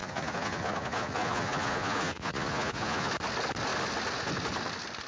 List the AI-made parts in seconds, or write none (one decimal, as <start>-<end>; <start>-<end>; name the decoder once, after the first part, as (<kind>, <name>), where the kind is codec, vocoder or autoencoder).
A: 0.0-3.1 (vocoder, Vocos)